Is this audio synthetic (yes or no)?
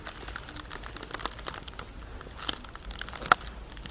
no